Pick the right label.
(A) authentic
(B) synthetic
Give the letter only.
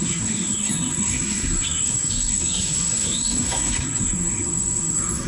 B